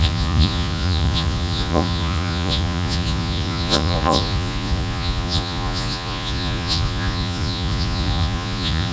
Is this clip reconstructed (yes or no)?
yes